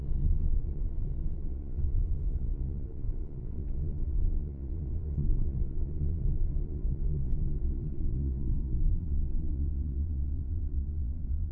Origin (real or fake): fake